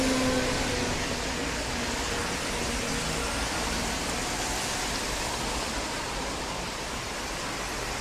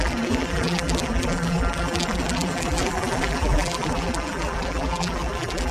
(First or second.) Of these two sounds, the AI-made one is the second